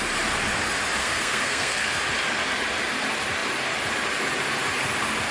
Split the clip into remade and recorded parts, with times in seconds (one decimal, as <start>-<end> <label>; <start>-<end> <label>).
0.0-1.0 recorded; 1.0-2.0 remade; 2.0-5.3 recorded